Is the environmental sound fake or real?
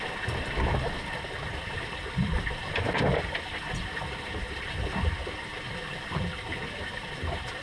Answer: fake